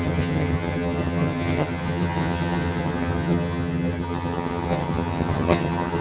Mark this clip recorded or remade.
remade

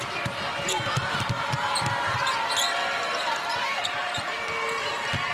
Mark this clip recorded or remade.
remade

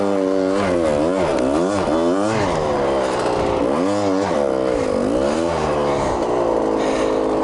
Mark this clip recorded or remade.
recorded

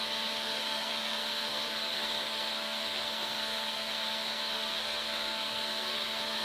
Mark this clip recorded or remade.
remade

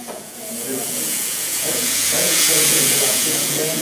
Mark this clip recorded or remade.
remade